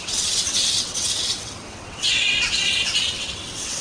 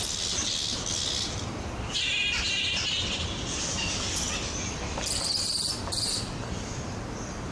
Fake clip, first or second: first